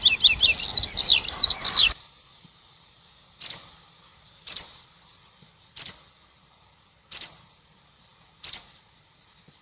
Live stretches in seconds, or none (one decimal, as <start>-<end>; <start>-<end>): 0.0-1.8; 3.4-4.1; 4.8-9.6